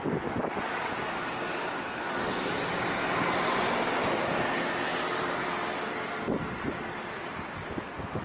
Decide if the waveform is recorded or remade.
recorded